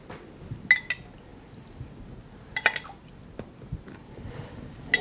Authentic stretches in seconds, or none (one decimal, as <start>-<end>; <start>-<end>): 0.0-5.0